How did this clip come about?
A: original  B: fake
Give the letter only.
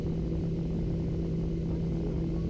A